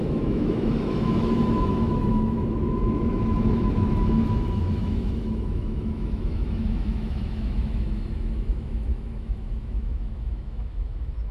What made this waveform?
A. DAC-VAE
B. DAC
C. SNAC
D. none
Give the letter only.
A